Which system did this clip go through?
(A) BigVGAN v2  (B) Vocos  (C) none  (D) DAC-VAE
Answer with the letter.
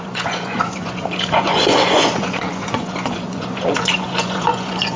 B